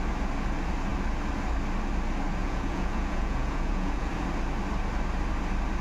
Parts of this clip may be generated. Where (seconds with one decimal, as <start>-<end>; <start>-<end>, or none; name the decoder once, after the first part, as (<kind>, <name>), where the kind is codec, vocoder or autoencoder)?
2.4-4.1 (vocoder, Vocos)